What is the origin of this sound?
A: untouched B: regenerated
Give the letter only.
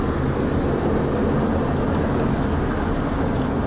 A